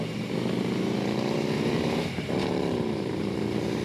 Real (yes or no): no